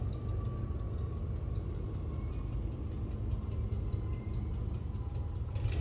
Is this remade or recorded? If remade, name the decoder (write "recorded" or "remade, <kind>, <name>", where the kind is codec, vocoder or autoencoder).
recorded